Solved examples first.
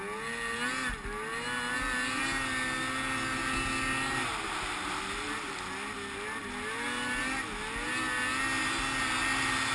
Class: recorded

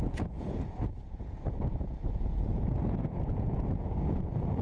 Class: remade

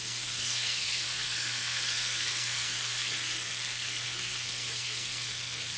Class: remade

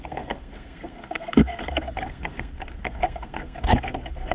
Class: remade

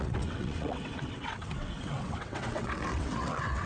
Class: remade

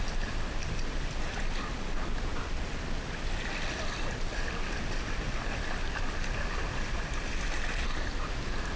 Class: recorded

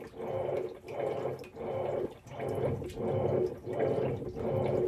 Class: recorded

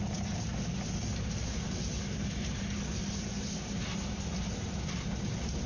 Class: recorded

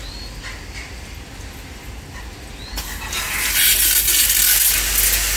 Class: recorded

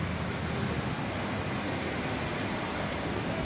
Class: recorded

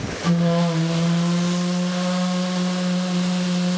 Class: recorded